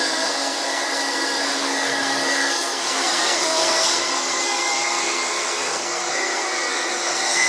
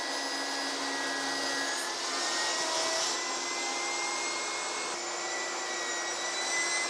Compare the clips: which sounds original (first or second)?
second